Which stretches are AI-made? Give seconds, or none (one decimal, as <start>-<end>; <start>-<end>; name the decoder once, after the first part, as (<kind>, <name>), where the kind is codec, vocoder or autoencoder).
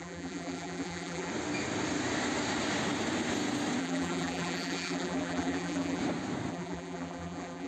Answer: 0.0-1.3 (vocoder, BigVGAN v2); 3.8-6.0; 6.5-7.7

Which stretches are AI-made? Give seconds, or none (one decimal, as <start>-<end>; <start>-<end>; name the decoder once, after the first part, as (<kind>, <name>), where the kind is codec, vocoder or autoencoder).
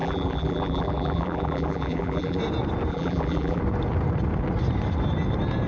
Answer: 0.0-2.4 (vocoder, BigVGAN v2); 2.9-3.6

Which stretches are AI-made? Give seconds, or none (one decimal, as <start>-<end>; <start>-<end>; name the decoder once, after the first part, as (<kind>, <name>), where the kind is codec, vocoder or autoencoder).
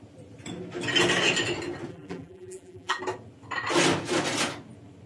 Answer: 1.9-3.0 (vocoder, BigVGAN v2)